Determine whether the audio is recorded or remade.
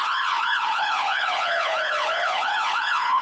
remade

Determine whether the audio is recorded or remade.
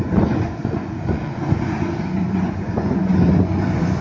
remade